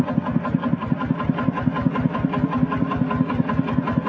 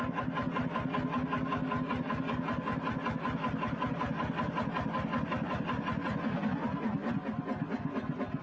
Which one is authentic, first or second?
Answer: second